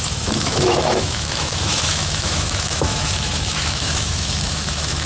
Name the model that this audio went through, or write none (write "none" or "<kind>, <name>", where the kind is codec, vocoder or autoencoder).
autoencoder, DAC-VAE